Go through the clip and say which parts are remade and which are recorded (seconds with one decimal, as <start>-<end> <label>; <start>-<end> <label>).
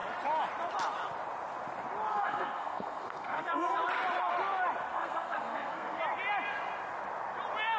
0.0-2.1 recorded; 2.1-3.8 remade; 3.8-4.9 recorded; 4.9-6.0 remade; 6.0-7.8 recorded